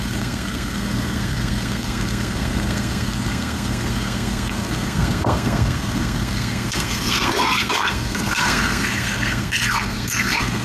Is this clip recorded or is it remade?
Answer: remade